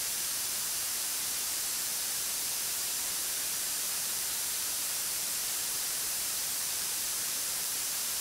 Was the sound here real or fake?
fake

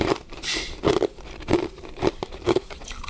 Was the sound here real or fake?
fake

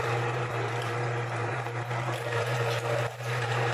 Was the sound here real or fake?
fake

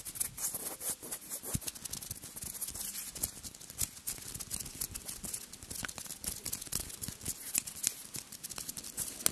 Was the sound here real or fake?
real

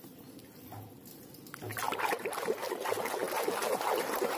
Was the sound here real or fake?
real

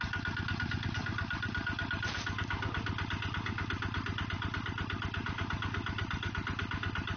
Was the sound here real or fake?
real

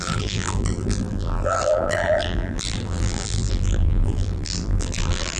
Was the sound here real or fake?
fake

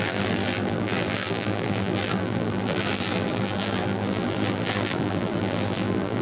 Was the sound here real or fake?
fake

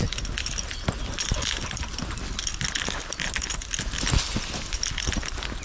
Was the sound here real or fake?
real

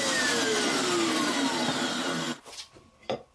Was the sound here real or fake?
real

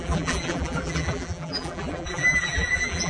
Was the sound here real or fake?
fake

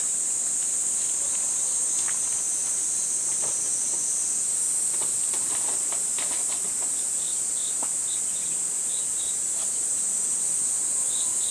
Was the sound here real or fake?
real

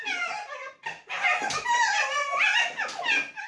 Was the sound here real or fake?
real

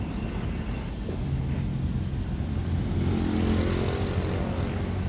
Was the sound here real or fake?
real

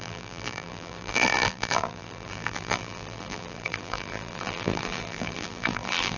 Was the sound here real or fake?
fake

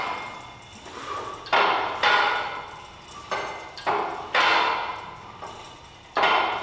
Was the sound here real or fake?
real